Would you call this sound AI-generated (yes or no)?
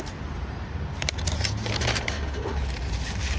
yes